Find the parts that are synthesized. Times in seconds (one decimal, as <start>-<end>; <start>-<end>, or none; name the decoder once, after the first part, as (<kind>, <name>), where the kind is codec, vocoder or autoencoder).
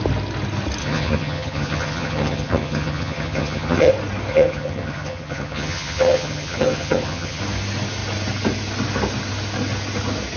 0.8-3.9 (vocoder, HiFi-GAN); 4.3-7.4